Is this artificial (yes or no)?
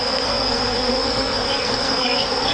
yes